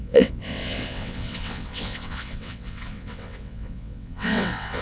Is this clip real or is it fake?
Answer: fake